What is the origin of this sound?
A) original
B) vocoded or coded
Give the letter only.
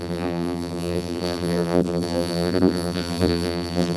B